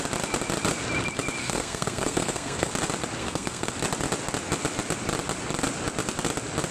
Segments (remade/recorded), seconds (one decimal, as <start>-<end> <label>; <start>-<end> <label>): 0.0-1.4 recorded; 1.4-2.7 remade; 2.7-3.2 recorded; 3.2-3.7 remade; 3.7-6.7 recorded